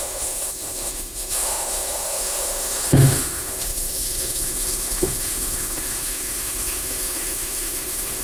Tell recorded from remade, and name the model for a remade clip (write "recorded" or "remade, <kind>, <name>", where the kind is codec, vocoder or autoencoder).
remade, autoencoder, DAC-VAE